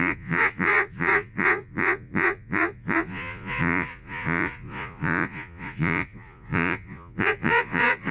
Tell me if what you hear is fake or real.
fake